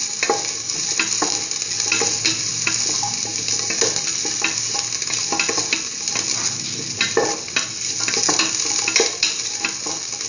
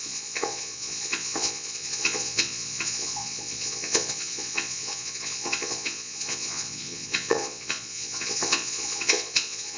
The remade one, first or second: second